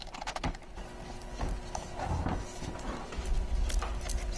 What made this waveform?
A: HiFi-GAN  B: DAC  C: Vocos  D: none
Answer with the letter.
D